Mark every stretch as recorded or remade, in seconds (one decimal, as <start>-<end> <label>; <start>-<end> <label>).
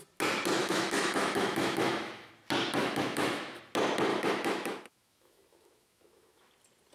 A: 0.0-0.6 recorded; 0.6-2.3 remade; 2.3-2.8 recorded; 2.8-3.6 remade; 3.6-4.1 recorded; 4.1-6.5 remade; 6.5-6.9 recorded